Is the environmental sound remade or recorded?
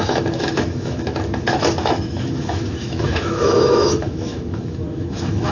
remade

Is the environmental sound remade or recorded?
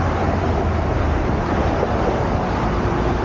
remade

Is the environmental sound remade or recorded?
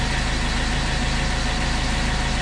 recorded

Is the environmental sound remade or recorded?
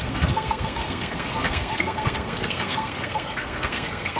remade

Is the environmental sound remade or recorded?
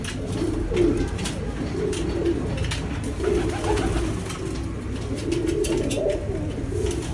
recorded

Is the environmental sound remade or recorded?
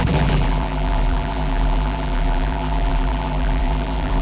remade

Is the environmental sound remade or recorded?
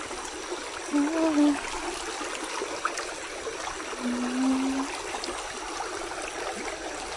recorded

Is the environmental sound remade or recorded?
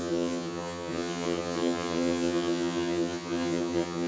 remade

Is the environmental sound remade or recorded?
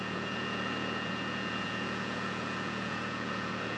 remade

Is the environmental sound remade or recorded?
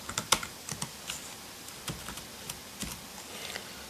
recorded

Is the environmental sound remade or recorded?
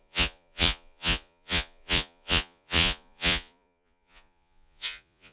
remade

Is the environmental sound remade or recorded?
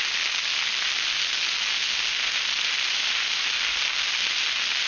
recorded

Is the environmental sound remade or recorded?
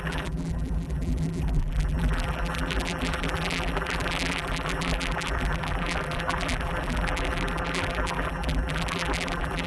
remade